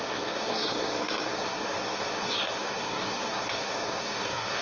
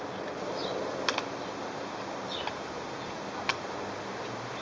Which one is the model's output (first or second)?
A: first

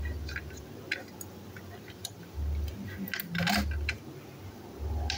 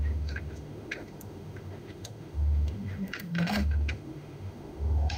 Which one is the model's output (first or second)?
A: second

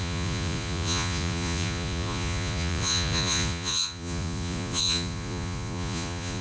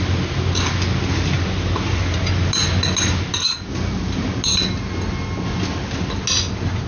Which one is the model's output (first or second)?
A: first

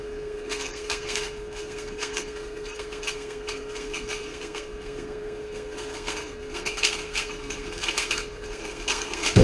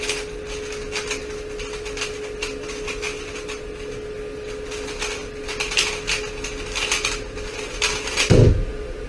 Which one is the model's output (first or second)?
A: first